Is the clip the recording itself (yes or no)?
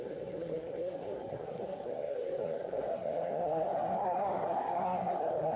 no